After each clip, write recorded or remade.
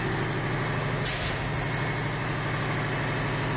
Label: recorded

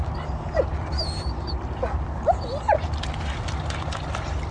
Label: recorded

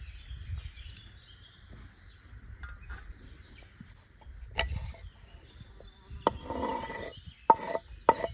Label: recorded